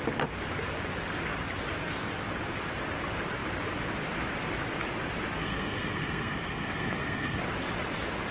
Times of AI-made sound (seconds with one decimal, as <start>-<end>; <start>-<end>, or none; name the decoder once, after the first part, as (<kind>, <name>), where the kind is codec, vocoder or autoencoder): 5.4-7.4 (codec, SNAC)